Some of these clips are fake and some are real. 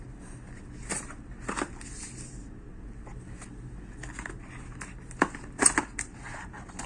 real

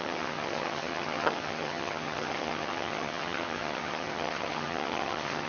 fake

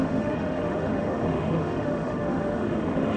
fake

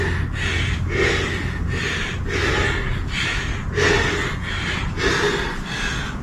real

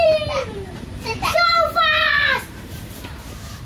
fake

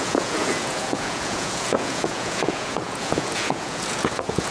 fake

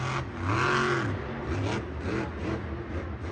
real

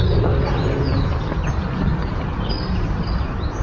real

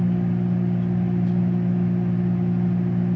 real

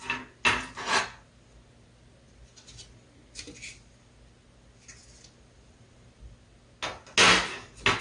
real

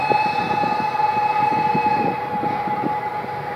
real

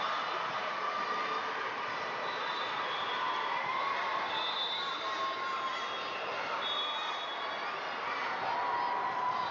real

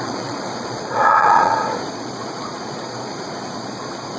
fake